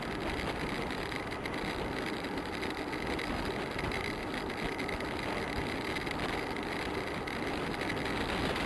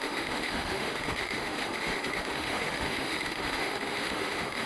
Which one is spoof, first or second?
second